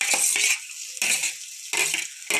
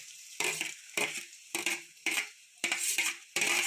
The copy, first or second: second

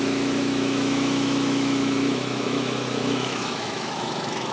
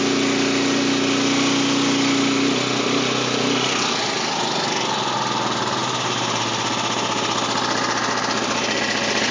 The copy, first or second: first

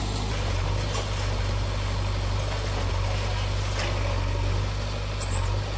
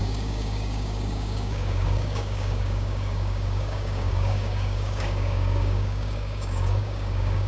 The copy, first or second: second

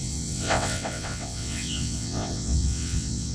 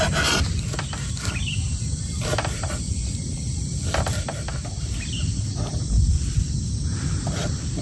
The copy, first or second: first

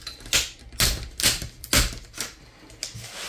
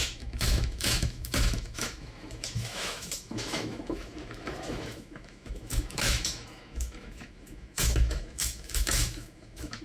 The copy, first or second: second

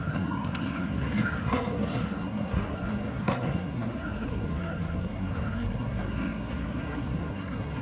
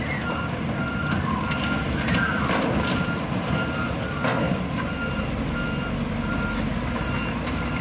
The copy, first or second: first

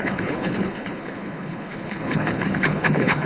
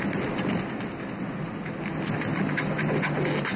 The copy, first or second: first